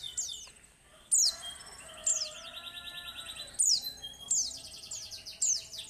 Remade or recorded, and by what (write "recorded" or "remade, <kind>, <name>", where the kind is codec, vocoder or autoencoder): recorded